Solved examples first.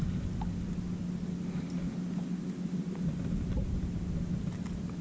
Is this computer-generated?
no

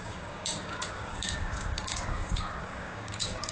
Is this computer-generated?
yes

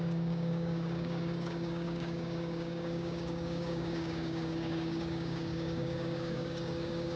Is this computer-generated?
yes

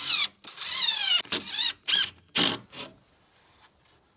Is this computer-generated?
no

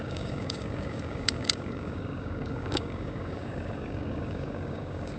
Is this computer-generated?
yes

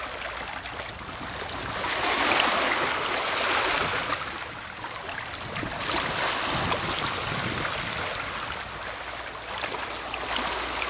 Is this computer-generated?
no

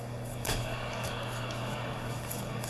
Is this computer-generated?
yes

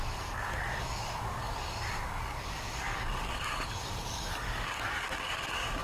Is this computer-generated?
yes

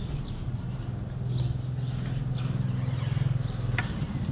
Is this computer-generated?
no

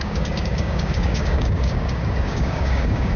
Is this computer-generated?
yes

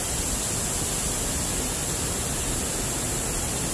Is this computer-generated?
no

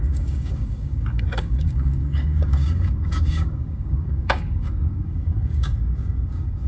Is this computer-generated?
yes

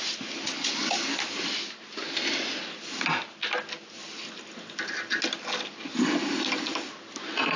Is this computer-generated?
no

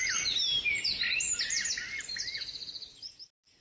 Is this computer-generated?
no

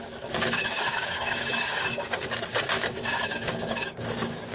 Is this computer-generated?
yes